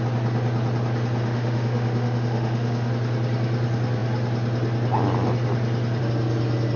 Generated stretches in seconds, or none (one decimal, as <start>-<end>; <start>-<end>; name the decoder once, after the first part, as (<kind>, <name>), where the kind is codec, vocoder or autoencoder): 1.2-2.9 (autoencoder, DAC-VAE)